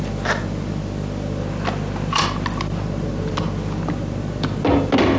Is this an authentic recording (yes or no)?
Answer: yes